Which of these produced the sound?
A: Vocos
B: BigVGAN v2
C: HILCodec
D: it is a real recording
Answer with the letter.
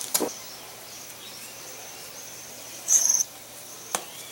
B